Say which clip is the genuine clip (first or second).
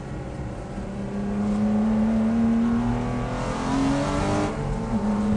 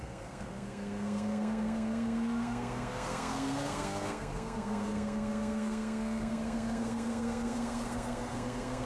first